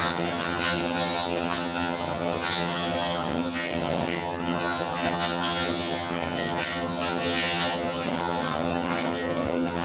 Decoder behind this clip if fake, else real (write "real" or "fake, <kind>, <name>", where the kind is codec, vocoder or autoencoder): fake, vocoder, HiFi-GAN